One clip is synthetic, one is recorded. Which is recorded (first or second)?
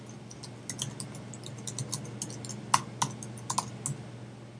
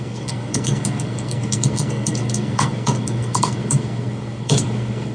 first